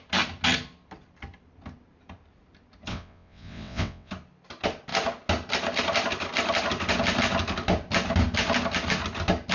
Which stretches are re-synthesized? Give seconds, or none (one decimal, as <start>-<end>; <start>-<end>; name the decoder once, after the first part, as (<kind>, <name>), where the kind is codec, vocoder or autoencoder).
2.9-4.1 (vocoder, WaveNeXt)